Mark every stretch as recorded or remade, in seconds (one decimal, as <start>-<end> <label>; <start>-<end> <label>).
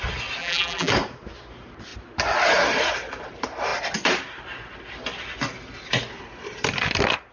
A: 0.0-0.4 recorded; 0.4-0.9 remade; 0.9-7.3 recorded